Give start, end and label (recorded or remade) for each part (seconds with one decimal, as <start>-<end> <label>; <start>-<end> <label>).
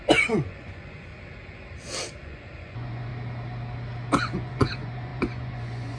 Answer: 0.0-1.1 remade; 1.1-2.2 recorded; 2.2-3.1 remade; 3.1-4.2 recorded; 4.2-6.0 remade